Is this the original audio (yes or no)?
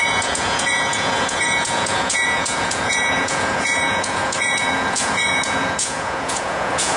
no